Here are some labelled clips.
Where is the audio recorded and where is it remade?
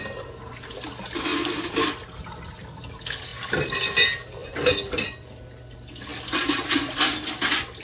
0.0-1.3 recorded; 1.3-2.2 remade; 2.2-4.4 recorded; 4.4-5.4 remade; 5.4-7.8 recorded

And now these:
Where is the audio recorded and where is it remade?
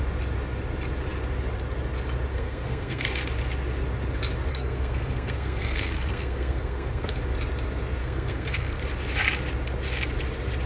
0.0-2.3 recorded; 2.3-3.1 remade; 3.1-4.5 recorded; 4.5-7.2 remade; 7.2-8.0 recorded; 8.0-8.8 remade; 8.8-10.7 recorded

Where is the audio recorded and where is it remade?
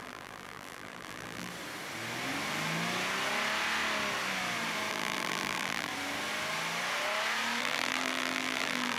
0.0-1.5 remade; 1.5-4.9 recorded; 4.9-5.9 remade; 5.9-7.6 recorded; 7.6-9.0 remade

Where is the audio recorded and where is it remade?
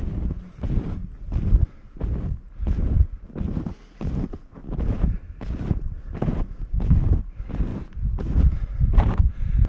0.0-7.7 recorded; 7.7-9.7 remade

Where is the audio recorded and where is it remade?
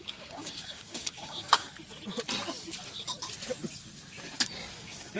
0.0-1.7 remade; 1.7-4.8 recorded; 4.8-5.2 remade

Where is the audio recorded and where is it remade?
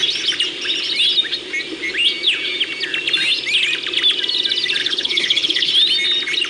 0.0-4.8 recorded; 4.8-5.7 remade; 5.7-6.5 recorded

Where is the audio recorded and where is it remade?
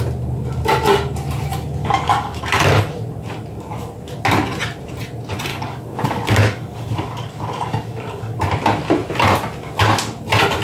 0.0-1.8 recorded; 1.8-2.4 remade; 2.4-5.5 recorded; 5.5-8.4 remade; 8.4-10.6 recorded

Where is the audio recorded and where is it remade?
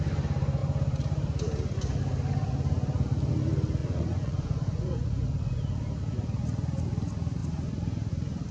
0.0-3.8 recorded; 3.8-5.7 remade; 5.7-8.5 recorded